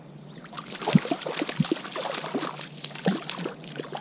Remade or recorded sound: recorded